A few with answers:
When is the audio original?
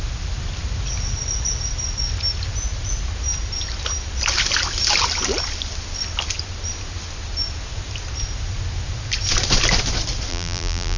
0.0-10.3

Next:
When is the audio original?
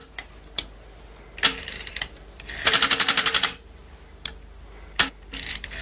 0.0-1.6; 3.8-5.2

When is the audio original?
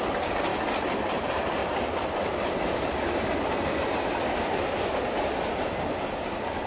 0.5-1.1; 1.6-5.6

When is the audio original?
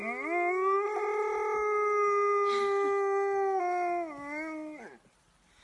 0.0-5.6